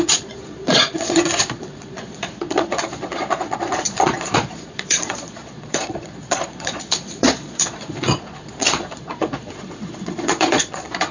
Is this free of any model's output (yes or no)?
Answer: no